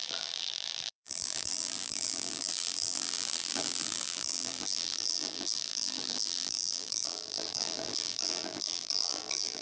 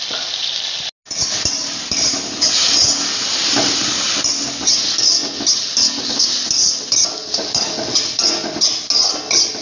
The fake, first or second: first